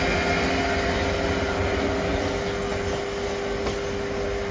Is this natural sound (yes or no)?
yes